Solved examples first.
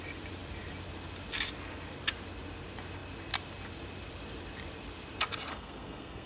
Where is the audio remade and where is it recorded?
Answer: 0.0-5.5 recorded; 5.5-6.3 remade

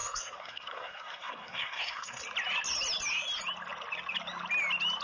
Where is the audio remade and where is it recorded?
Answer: 0.0-2.2 remade; 2.2-5.0 recorded

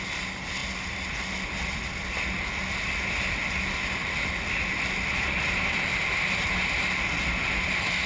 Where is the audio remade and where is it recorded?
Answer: 0.0-8.1 recorded

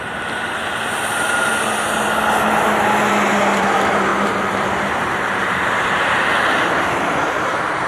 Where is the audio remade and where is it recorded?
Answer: 0.0-1.5 remade; 1.5-3.6 recorded; 3.6-7.9 remade

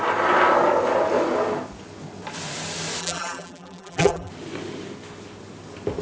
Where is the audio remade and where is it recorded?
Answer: 0.0-3.0 recorded; 3.0-4.3 remade; 4.3-6.0 recorded

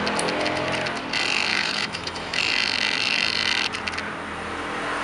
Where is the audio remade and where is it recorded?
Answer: 0.0-1.5 recorded; 1.5-2.4 remade; 2.4-5.0 recorded

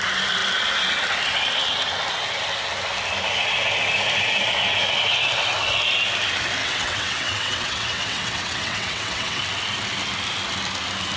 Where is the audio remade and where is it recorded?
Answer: 0.0-6.6 recorded; 6.6-9.4 remade; 9.4-11.2 recorded